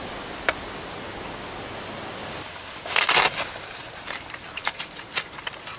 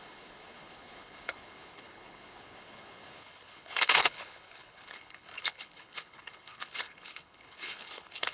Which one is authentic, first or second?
first